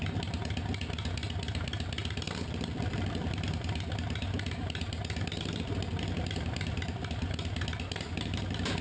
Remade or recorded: recorded